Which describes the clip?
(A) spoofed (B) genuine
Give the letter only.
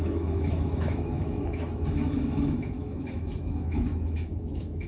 A